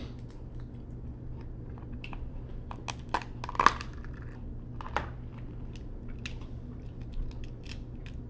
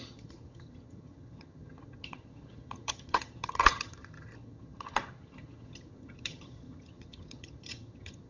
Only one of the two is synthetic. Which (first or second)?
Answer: second